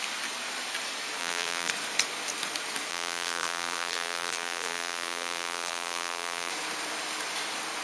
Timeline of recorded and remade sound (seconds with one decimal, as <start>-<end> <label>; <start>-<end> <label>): 0.0-1.2 recorded; 1.2-1.7 remade; 1.7-2.9 recorded; 2.9-6.5 remade; 6.5-7.8 recorded